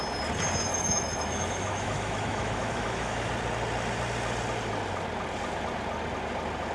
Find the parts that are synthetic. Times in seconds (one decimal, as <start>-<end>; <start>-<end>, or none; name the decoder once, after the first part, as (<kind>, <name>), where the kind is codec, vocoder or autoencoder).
0.7-3.3 (autoencoder, DAC-VAE)